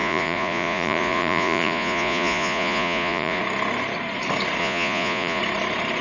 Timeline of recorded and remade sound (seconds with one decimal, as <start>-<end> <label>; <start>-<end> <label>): 0.0-3.4 remade; 3.4-4.6 recorded; 4.6-5.4 remade; 5.4-6.0 recorded